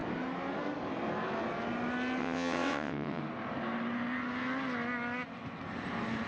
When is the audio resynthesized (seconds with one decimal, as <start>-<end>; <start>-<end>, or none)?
2.2-3.2